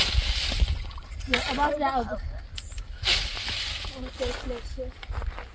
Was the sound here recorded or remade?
recorded